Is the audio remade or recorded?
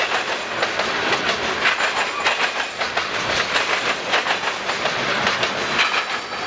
recorded